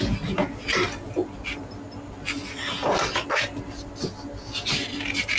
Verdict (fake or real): real